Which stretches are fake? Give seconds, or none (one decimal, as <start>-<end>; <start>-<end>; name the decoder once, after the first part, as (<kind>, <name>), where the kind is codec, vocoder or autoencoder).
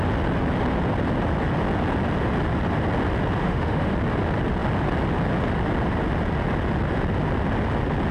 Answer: 3.4-3.9 (autoencoder, DAC-VAE)